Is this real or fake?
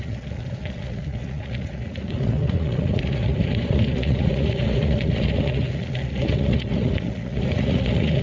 fake